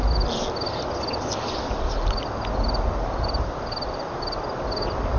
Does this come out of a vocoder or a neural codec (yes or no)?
no